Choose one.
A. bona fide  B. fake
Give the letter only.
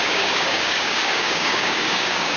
B